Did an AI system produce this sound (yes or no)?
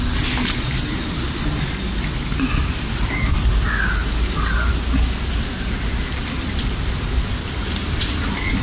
no